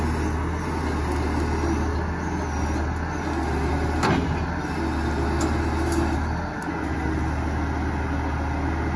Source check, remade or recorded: recorded